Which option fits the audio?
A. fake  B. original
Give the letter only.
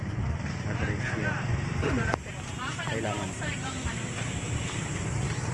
A